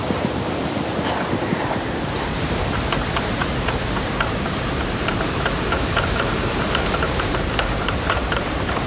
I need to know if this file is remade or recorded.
remade